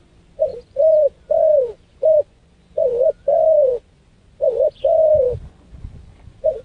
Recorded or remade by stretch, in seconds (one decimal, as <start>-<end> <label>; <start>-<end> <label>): 0.0-6.6 remade